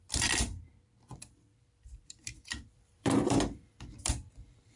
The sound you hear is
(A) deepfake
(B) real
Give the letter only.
A